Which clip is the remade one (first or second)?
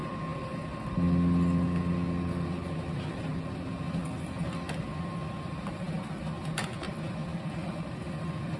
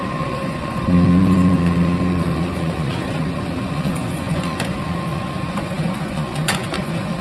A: second